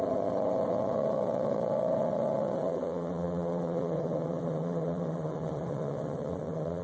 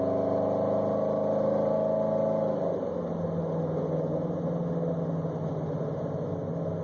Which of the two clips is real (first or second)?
second